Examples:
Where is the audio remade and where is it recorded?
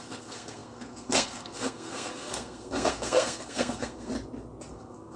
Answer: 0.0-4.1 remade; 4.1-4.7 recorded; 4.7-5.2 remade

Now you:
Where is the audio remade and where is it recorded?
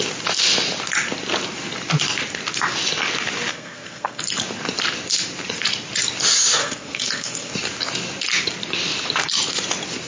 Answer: 0.0-3.5 recorded; 3.5-4.2 remade; 4.2-6.6 recorded; 6.6-7.5 remade; 7.5-10.1 recorded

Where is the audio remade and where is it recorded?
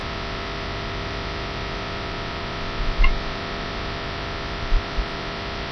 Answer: 0.0-5.7 recorded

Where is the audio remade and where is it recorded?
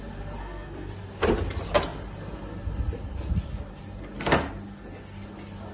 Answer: 0.0-0.4 recorded; 0.4-0.9 remade; 0.9-5.7 recorded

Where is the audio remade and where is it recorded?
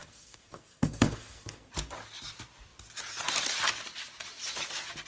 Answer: 0.0-1.7 remade; 1.7-5.1 recorded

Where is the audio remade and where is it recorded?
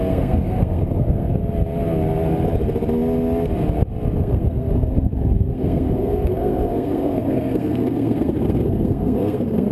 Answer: 0.0-1.4 remade; 1.4-4.2 recorded; 4.2-9.7 remade